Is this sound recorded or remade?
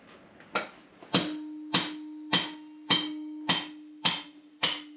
recorded